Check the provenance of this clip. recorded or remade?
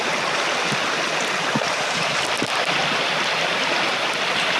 recorded